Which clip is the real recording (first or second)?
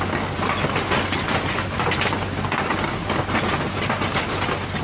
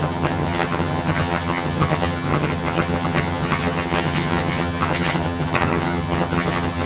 first